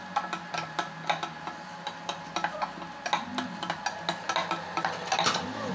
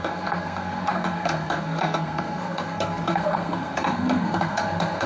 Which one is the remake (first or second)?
second